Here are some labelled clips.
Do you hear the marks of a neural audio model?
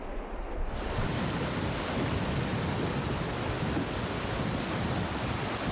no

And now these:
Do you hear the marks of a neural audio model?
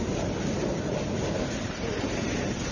no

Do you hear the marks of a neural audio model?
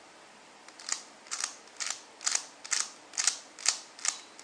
no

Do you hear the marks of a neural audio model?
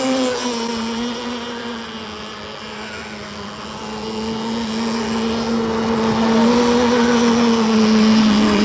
no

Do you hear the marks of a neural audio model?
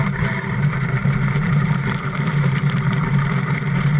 yes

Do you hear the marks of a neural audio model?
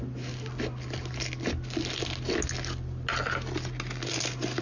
no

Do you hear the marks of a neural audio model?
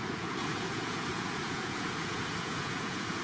yes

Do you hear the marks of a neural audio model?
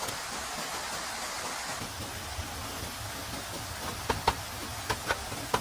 no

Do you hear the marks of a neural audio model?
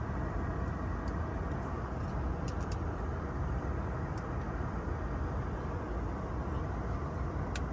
no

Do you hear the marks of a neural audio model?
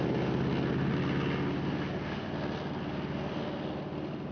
no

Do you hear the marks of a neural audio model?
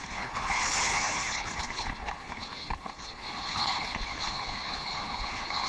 yes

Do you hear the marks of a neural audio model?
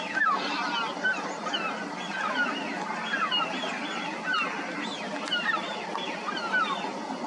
no